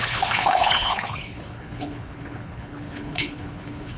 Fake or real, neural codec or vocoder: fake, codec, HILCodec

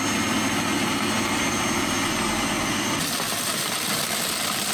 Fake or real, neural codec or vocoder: real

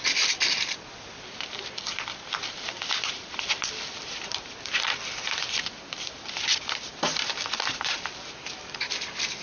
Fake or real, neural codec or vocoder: fake, vocoder, BigVGAN v2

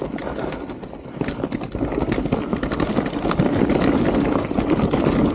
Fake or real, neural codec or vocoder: real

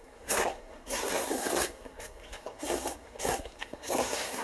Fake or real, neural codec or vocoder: fake, codec, SNAC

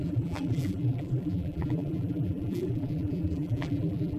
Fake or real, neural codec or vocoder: fake, vocoder, BigVGAN v2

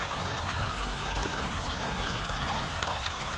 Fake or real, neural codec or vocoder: fake, codec, SNAC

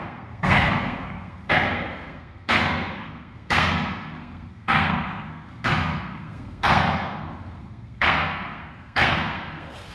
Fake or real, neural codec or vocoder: fake, codec, SNAC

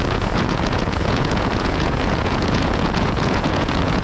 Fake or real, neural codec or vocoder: fake, vocoder, Vocos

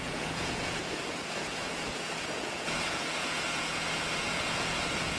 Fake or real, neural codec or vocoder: fake, vocoder, Vocos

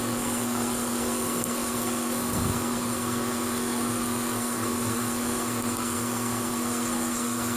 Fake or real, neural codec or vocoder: fake, codec, SNAC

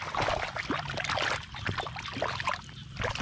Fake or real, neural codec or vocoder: real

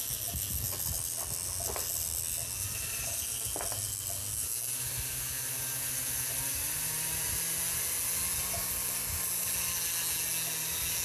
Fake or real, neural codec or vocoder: real